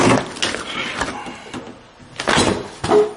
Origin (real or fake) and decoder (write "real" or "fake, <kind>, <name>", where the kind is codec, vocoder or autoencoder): real